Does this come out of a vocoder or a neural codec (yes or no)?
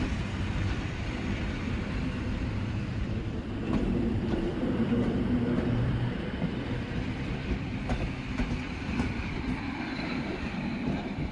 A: yes